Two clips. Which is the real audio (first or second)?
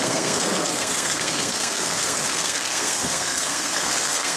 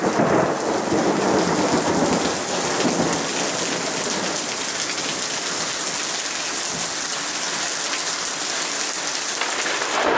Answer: second